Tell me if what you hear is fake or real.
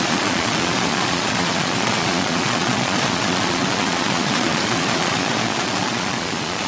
fake